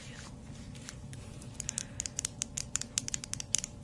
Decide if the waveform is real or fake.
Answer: fake